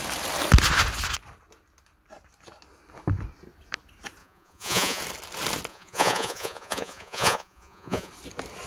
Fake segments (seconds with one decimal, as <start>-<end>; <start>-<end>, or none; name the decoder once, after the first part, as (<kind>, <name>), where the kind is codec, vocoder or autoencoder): 4.2-5.0 (vocoder, Vocos); 5.7-8.1